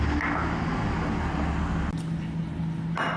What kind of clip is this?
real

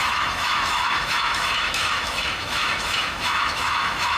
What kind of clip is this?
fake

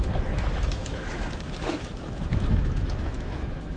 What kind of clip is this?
fake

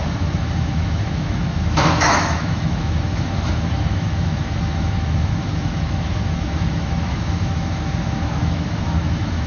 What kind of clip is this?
fake